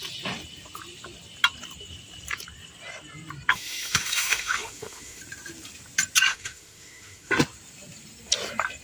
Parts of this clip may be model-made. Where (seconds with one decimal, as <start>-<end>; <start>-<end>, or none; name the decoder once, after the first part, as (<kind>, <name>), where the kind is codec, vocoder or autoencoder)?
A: 3.5-5.2 (autoencoder, DAC-VAE); 6.3-7.3